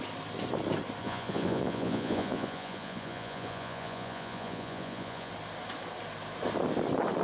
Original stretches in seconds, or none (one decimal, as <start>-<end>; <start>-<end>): 0.0-1.0; 5.3-7.2